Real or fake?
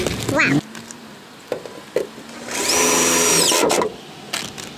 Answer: real